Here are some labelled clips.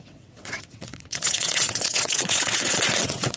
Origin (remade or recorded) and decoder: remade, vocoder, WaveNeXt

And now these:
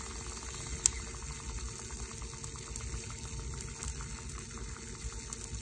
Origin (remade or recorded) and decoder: recorded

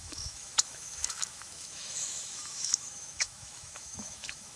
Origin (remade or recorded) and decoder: remade, autoencoder, DAC-VAE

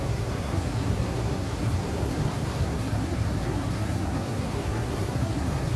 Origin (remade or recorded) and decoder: remade, codec, SNAC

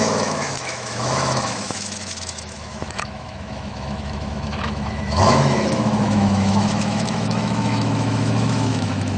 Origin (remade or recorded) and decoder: remade, autoencoder, DAC-VAE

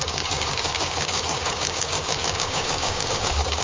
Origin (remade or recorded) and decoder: remade, codec, DAC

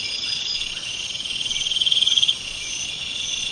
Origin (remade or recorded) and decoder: remade, vocoder, Vocos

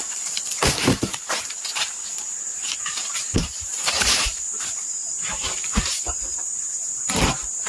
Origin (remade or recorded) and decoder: remade, vocoder, BigVGAN v2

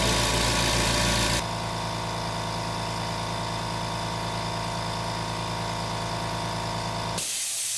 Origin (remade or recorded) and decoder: recorded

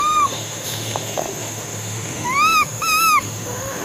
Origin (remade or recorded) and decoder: remade, autoencoder, DAC-VAE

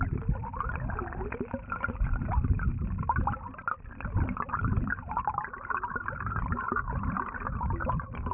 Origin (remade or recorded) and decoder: recorded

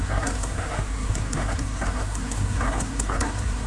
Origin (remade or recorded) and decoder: remade, codec, SNAC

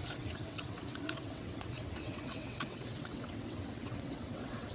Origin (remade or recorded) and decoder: remade, vocoder, WaveNeXt